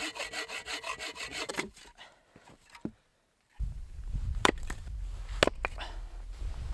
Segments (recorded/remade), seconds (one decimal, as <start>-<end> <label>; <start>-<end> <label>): 0.0-1.3 recorded; 1.3-2.2 remade; 2.2-3.1 recorded; 3.1-4.7 remade; 4.7-6.7 recorded